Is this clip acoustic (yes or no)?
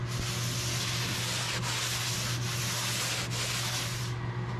yes